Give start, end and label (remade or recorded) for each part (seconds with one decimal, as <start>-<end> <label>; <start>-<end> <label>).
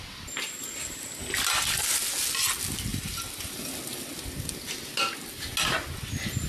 0.0-2.9 recorded; 2.9-3.6 remade; 3.6-6.5 recorded